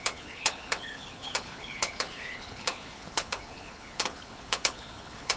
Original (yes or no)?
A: no